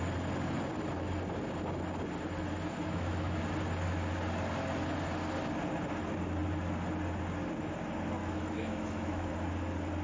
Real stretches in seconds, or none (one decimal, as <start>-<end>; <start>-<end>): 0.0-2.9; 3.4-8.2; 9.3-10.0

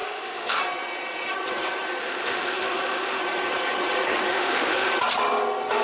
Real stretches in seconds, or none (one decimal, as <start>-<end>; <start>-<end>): 0.6-2.0; 3.2-4.3; 4.9-5.8

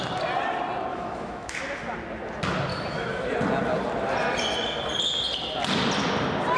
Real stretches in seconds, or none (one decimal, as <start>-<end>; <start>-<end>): 0.0-0.9; 1.6-2.7; 3.3-6.6

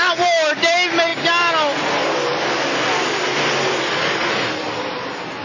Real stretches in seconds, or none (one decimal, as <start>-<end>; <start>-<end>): 0.0-5.4